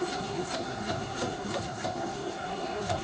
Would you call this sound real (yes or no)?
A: no